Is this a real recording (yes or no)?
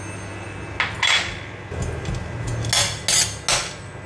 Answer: yes